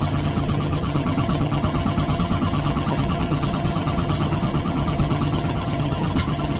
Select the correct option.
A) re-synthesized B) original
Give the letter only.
A